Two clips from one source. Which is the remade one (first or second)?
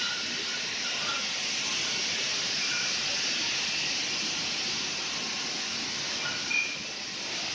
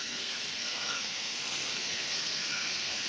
second